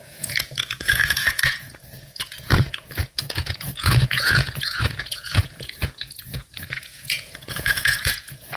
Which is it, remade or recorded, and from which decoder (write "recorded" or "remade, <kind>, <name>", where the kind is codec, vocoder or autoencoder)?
remade, vocoder, Vocos